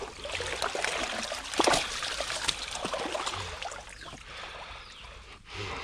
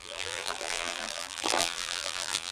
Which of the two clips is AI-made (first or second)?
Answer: second